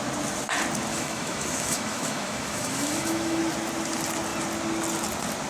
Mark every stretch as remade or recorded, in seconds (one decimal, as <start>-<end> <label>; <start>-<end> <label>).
0.0-0.9 recorded; 0.9-3.4 remade; 3.4-5.5 recorded